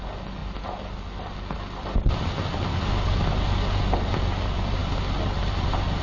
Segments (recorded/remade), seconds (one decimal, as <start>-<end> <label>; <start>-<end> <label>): 0.0-6.0 recorded

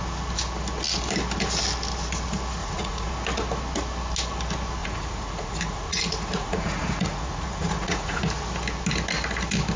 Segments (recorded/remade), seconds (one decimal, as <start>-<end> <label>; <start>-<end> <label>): 0.0-2.6 recorded; 2.6-3.1 remade; 3.1-4.8 recorded; 4.8-8.2 remade; 8.2-9.8 recorded